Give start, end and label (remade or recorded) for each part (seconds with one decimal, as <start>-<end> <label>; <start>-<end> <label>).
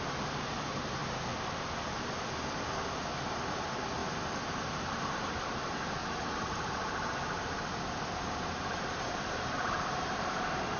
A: 0.0-1.0 remade; 1.0-2.8 recorded; 2.8-4.0 remade; 4.0-4.7 recorded; 4.7-6.0 remade; 6.0-9.0 recorded; 9.0-10.8 remade